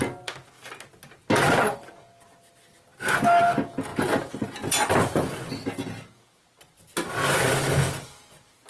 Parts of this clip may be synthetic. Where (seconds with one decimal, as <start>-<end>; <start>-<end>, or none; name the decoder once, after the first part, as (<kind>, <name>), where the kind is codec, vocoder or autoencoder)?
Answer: none